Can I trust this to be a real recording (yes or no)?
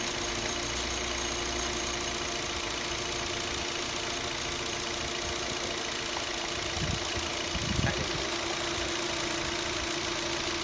yes